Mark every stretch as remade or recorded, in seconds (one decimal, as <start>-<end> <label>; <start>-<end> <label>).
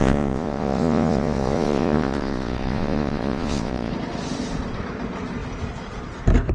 0.0-3.9 remade; 3.9-6.5 recorded